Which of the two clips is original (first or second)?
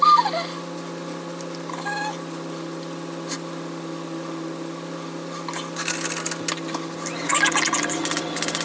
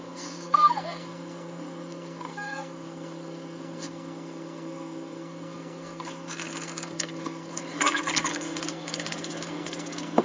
first